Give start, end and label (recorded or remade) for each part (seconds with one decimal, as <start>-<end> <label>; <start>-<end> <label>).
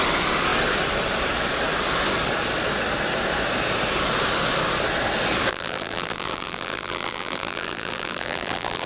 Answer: 0.0-5.5 recorded; 5.5-8.9 remade